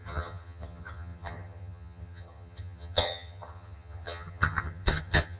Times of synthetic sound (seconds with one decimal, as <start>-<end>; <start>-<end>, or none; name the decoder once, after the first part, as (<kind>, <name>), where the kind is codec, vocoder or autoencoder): 0.0-5.4 (vocoder, HiFi-GAN)